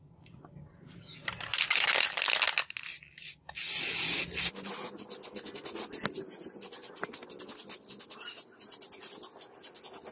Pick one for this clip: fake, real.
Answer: real